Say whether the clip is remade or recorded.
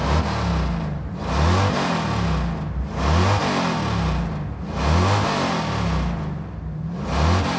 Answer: recorded